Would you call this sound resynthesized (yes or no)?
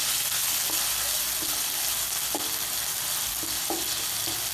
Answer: no